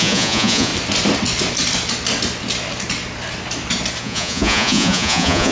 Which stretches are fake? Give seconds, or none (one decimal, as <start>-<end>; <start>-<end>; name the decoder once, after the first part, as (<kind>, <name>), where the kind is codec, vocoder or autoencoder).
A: 0.0-0.7 (vocoder, Vocos); 4.0-5.5